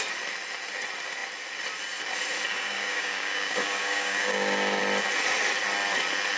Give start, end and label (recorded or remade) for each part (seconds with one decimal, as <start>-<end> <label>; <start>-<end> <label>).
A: 0.0-2.5 recorded; 2.5-4.8 remade; 4.8-6.4 recorded